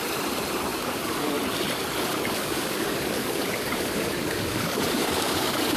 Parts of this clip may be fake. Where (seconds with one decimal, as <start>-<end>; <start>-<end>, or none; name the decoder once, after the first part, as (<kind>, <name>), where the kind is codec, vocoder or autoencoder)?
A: 0.7-1.3 (codec, DAC); 2.1-5.8